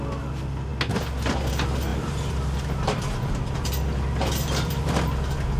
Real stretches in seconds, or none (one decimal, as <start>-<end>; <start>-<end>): 0.0-1.9